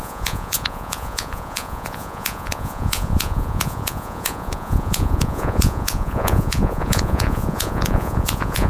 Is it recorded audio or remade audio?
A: remade